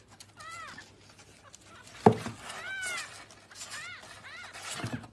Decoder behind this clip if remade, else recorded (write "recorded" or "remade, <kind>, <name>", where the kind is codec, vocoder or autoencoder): recorded